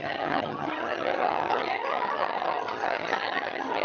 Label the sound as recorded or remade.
remade